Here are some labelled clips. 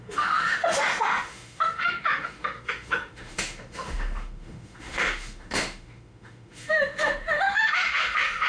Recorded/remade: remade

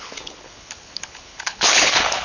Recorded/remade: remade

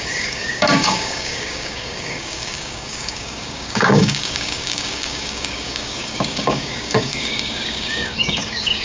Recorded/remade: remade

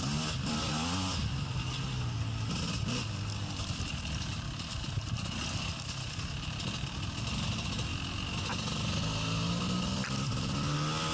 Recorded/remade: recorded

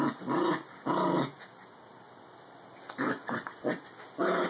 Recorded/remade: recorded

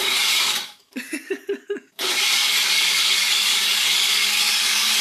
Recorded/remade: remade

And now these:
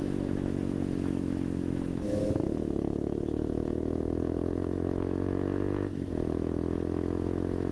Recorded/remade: remade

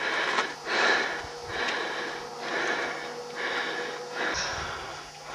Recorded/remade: recorded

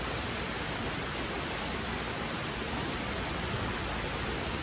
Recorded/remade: recorded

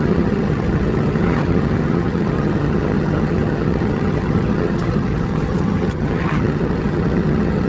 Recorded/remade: remade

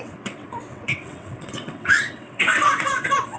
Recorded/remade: remade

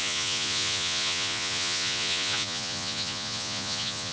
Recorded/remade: remade